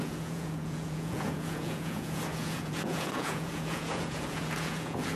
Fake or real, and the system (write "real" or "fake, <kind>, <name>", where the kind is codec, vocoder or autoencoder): fake, vocoder, Vocos